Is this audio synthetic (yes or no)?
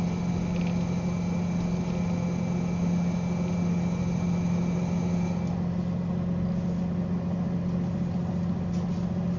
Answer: no